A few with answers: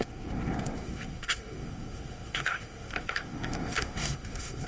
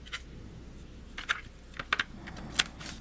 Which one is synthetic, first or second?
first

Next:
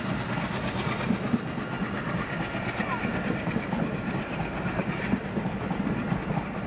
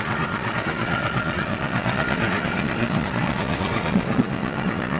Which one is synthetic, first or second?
second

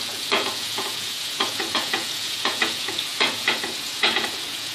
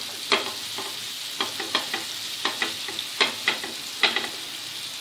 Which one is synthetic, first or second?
first